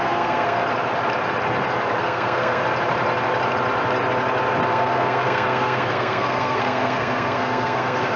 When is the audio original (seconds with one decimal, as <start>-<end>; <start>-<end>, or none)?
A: 0.6-2.0; 2.6-4.7

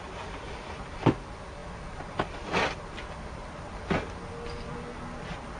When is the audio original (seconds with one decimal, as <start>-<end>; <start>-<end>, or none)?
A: 0.0-5.6

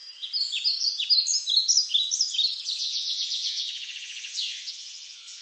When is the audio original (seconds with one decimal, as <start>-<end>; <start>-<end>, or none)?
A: 0.0-2.8